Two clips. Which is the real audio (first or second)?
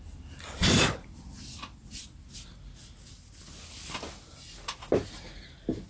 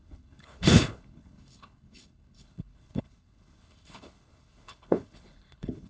first